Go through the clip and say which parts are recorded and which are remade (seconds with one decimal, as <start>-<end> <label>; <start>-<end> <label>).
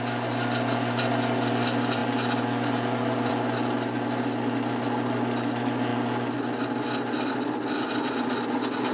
0.0-8.9 recorded